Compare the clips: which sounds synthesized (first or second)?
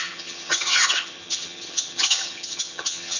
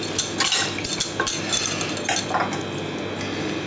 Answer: first